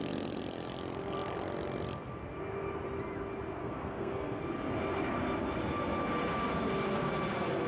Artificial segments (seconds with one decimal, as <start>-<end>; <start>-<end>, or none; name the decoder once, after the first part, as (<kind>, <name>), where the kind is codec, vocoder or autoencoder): 3.6-4.4 (codec, SNAC)